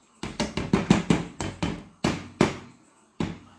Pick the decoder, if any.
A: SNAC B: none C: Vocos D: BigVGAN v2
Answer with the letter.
B